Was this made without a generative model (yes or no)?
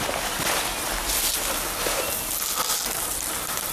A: yes